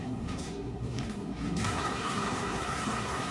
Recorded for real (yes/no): no